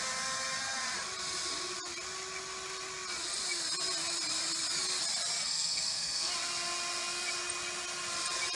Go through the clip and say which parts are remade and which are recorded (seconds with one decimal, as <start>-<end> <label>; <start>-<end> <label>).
0.0-5.4 recorded; 5.4-6.3 remade; 6.3-8.6 recorded